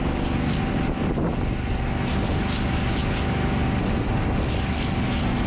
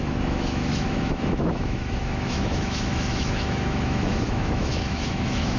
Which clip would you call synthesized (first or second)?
second